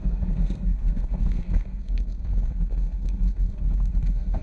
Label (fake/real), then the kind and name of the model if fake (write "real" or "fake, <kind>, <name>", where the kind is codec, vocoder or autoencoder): fake, codec, SNAC